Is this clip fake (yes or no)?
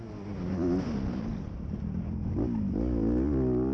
no